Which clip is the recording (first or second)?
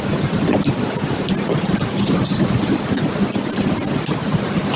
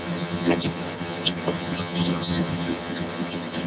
first